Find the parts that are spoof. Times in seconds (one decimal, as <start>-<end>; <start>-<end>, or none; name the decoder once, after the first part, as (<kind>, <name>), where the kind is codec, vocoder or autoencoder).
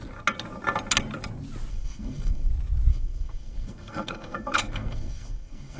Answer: 1.7-2.5 (codec, SNAC); 2.9-5.8